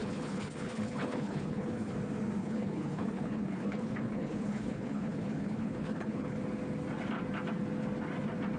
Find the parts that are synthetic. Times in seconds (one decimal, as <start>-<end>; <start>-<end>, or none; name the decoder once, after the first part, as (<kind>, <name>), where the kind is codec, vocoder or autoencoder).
0.0-1.9 (codec, HILCodec); 2.4-6.4